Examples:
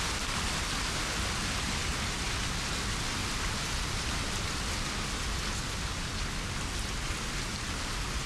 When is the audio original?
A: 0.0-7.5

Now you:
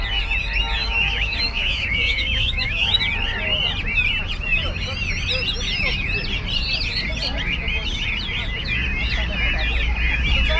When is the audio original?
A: 0.0-0.8; 3.0-10.6

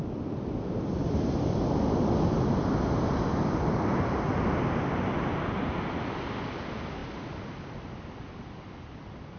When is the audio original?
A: 0.0-9.4